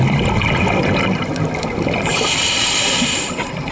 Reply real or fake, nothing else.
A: real